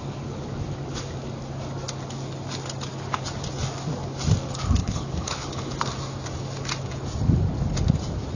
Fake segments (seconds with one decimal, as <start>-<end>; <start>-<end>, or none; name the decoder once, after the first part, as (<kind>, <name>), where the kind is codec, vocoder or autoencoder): 4.8-5.8 (codec, HILCodec)

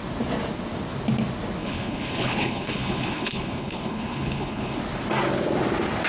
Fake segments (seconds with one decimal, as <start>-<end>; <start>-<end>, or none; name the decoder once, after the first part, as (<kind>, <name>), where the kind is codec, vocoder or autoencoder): 1.6-4.8 (codec, HILCodec)